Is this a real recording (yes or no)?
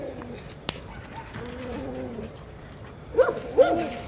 yes